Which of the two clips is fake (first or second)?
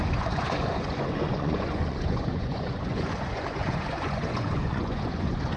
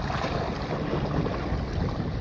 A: first